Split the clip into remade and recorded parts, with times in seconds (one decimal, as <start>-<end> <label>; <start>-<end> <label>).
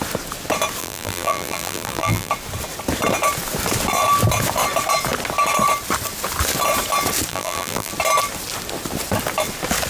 0.0-0.8 recorded; 0.8-2.3 remade; 2.3-7.3 recorded; 7.3-7.9 remade; 7.9-9.9 recorded